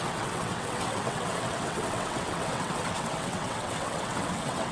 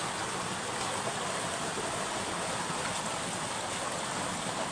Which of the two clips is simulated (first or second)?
first